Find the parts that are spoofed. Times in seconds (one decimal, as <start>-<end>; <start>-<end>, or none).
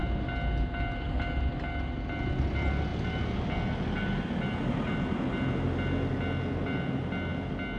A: none